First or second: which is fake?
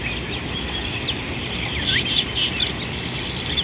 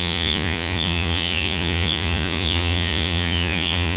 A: second